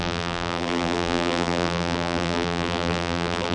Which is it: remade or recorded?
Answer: remade